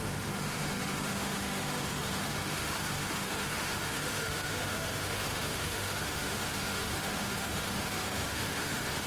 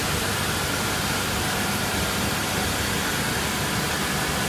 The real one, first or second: second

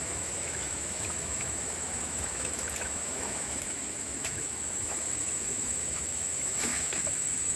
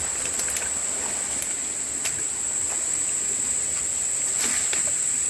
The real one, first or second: second